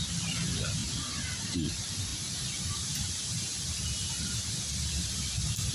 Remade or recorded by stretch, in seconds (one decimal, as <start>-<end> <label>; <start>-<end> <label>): 0.0-0.8 recorded; 0.8-1.5 remade; 1.5-2.1 recorded; 2.1-5.1 remade; 5.1-5.7 recorded